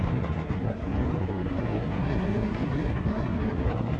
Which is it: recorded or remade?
remade